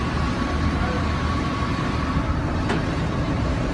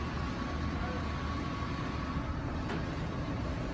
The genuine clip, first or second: second